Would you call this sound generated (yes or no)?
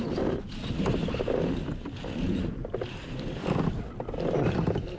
no